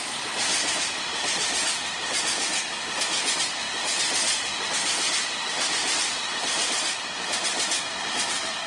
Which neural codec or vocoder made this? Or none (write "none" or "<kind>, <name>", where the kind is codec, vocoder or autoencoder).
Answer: vocoder, BigVGAN v2